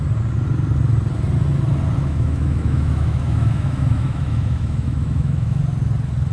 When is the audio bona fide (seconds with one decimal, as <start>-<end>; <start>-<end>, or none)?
0.0-2.0; 5.6-6.3